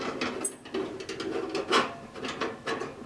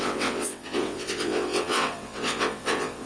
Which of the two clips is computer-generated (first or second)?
second